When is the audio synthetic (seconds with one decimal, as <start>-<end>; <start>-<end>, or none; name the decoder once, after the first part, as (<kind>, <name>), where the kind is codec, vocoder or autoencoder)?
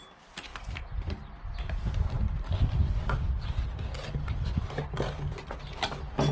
none